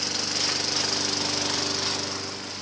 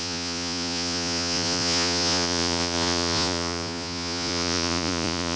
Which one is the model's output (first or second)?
second